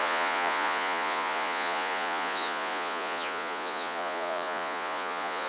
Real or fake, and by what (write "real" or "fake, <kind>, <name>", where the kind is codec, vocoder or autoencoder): fake, vocoder, Vocos